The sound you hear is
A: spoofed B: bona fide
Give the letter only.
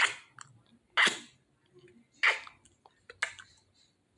B